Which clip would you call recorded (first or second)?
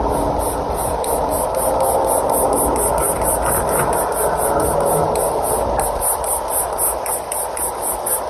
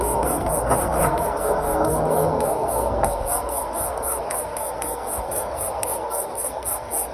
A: first